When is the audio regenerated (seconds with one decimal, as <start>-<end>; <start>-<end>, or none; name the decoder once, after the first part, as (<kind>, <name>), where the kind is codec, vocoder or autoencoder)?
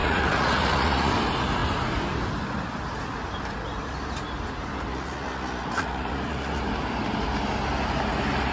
0.0-1.1 (vocoder, Vocos); 4.9-6.6